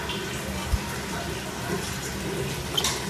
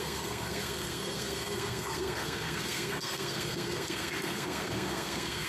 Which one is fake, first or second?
second